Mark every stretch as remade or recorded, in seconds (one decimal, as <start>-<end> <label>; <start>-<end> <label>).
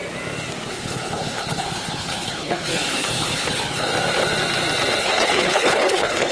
0.0-0.7 recorded; 0.7-3.9 remade; 3.9-5.0 recorded; 5.0-6.3 remade